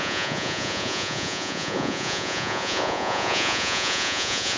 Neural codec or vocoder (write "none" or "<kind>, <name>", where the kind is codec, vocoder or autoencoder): vocoder, Vocos